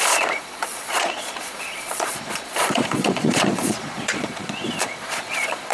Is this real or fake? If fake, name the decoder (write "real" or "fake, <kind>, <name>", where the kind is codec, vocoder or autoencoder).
fake, vocoder, Vocos